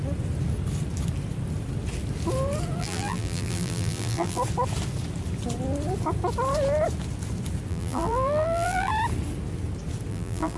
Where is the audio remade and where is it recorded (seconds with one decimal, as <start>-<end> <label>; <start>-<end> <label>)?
0.0-2.8 recorded; 2.8-4.4 remade; 4.4-7.7 recorded; 7.7-8.9 remade; 8.9-10.1 recorded; 10.1-10.6 remade